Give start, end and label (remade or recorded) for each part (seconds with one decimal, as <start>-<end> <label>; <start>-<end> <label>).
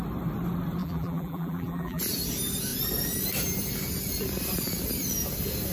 0.0-0.8 recorded; 0.8-2.0 remade; 2.0-5.7 recorded